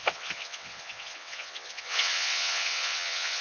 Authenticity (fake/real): fake